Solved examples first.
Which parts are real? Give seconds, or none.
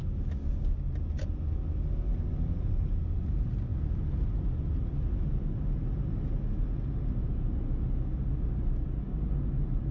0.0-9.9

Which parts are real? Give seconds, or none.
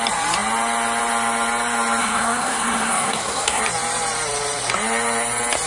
0.0-2.0; 3.6-5.7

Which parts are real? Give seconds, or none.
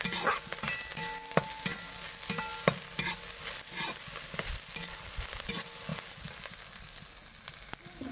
0.0-8.1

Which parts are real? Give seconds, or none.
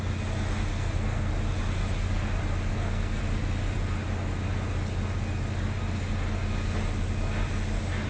0.0-0.7; 1.3-2.7; 3.2-8.1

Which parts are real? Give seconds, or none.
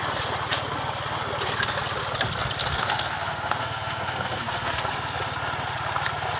0.0-2.7; 4.9-6.4